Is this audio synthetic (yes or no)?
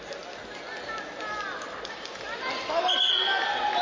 no